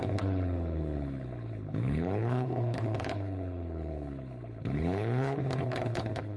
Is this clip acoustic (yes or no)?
no